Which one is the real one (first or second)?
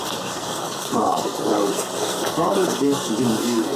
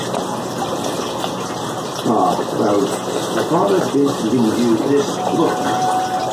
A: second